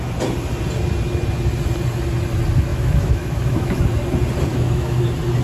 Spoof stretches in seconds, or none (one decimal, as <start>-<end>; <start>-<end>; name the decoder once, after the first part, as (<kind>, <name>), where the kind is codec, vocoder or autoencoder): 2.7-3.8 (autoencoder, DAC-VAE); 4.5-5.0